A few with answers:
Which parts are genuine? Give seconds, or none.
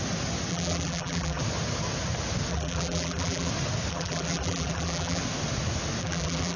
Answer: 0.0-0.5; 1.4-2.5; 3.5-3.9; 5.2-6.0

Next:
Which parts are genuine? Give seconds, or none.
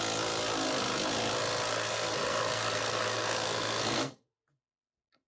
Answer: 0.0-1.7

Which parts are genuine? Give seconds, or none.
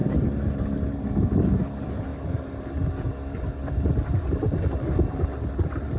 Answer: 0.0-6.0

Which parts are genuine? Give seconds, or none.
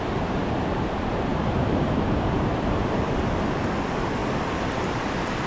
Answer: 0.0-5.5